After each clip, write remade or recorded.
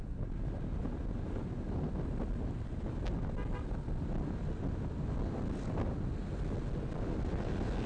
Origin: recorded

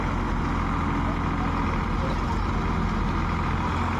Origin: recorded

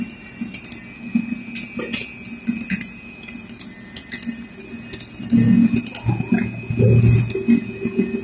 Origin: recorded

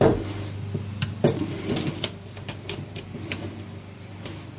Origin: remade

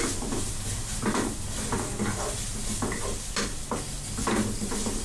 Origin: recorded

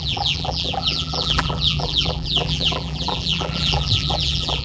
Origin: remade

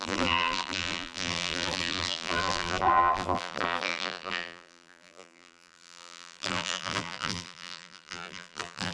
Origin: remade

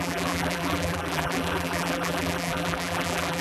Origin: remade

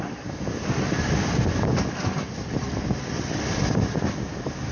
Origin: recorded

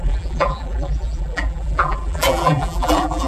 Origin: remade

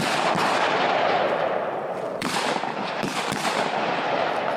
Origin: remade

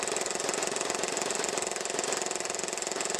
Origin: remade